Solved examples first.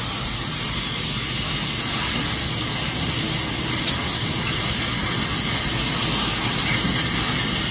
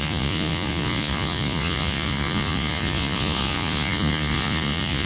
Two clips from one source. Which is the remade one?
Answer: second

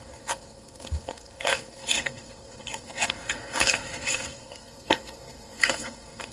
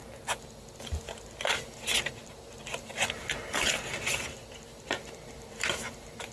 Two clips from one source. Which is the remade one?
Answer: first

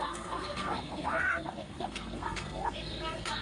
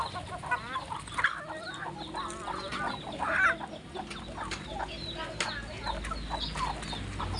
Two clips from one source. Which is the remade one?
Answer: first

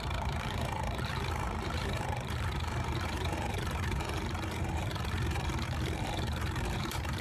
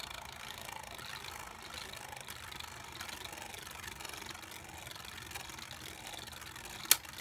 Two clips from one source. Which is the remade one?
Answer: first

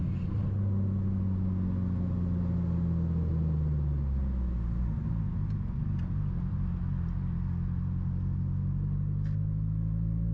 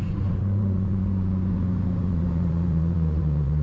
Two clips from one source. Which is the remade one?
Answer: second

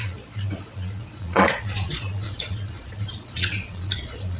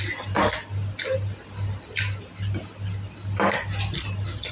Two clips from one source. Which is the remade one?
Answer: first